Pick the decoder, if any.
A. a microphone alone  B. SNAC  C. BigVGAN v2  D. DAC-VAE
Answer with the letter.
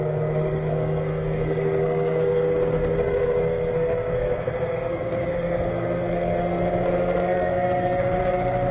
B